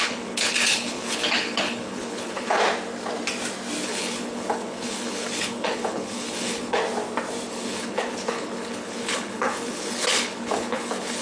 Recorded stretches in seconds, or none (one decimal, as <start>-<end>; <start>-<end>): 2.6-3.8; 6.8-7.5

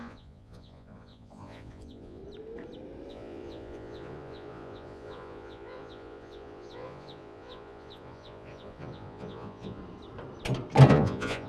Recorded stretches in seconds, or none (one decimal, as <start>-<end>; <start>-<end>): 2.2-3.1; 9.8-10.9

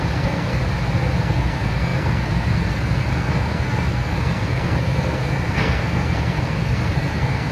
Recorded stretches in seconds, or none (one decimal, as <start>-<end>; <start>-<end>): 0.6-1.2

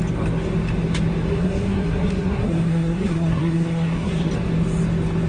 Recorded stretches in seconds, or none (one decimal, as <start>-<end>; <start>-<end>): 0.0-1.3; 4.3-5.3

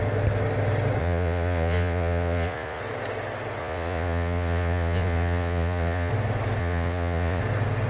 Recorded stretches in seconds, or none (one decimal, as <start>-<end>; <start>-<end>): 0.0-1.0; 2.8-3.6; 6.1-6.6; 7.4-7.9

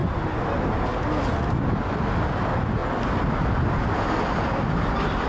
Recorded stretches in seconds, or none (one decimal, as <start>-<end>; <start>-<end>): 0.0-5.3

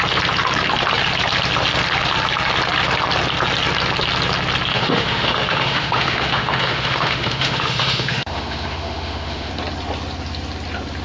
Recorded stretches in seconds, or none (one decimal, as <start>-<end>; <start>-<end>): 0.0-4.7; 9.5-11.0

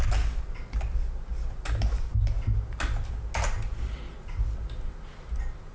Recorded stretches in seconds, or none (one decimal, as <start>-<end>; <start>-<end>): 0.0-5.7